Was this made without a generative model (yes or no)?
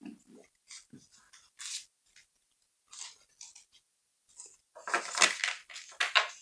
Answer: yes